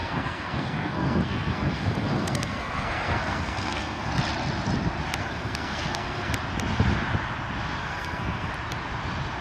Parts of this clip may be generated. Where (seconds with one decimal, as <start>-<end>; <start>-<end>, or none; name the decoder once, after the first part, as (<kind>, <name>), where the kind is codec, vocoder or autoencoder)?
0.0-4.1 (codec, SNAC); 5.2-6.3; 7.8-8.5